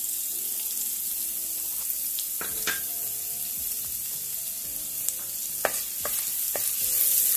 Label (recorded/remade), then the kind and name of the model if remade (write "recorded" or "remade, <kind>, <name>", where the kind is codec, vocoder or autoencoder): recorded